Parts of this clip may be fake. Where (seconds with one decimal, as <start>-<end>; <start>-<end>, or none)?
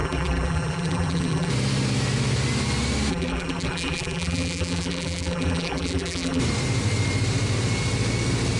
0.0-1.5; 3.1-6.4